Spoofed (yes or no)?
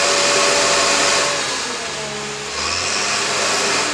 no